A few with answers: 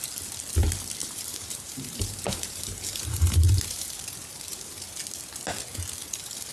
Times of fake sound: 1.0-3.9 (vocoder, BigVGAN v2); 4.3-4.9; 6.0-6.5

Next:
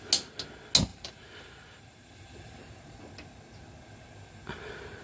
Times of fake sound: 0.9-3.0 (vocoder, BigVGAN v2)